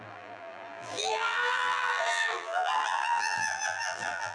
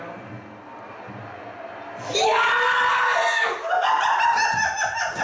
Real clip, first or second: second